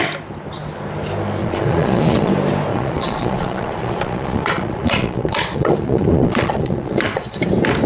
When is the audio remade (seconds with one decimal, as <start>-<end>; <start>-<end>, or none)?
1.4-2.3; 2.7-7.4